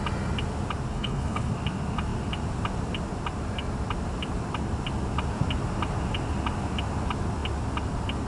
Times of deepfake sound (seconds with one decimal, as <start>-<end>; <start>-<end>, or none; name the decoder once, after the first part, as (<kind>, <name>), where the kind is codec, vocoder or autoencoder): 0.9-1.5 (codec, HILCodec)

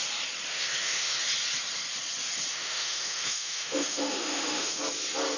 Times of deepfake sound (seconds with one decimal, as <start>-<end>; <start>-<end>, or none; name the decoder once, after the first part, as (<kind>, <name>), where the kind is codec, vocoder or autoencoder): 0.5-1.2 (autoencoder, DAC-VAE); 2.5-4.8

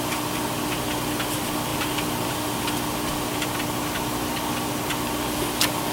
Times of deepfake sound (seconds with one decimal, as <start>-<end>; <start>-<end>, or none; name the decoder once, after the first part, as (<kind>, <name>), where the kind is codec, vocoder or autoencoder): none